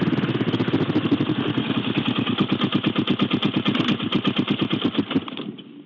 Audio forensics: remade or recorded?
recorded